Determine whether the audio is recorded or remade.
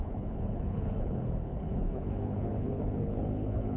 remade